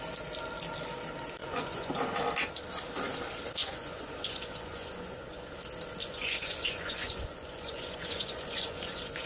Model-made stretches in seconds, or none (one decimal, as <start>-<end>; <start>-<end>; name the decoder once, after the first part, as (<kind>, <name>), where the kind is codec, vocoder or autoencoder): 1.4-1.9 (vocoder, Vocos); 3.6-5.5; 6.0-9.3